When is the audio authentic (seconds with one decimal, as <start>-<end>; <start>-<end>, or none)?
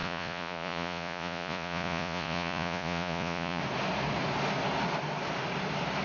3.6-6.0